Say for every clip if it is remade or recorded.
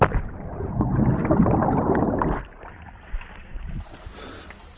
recorded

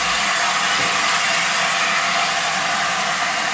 recorded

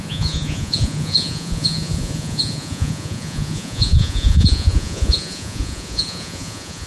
remade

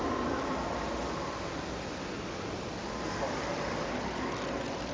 recorded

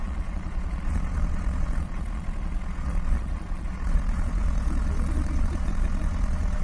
remade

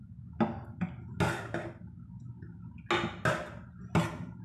recorded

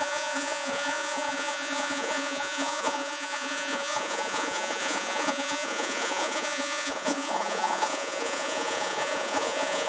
remade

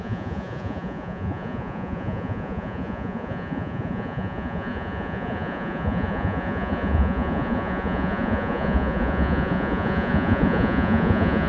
remade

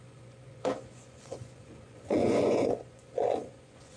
remade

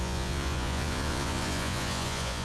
remade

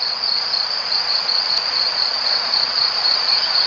remade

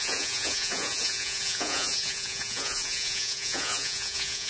remade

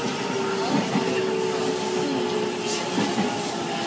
recorded